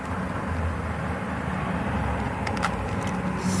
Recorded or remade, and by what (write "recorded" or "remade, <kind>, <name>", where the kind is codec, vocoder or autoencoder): remade, vocoder, BigVGAN v2